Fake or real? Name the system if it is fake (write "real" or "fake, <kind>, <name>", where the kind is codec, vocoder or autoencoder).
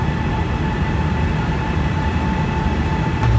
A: real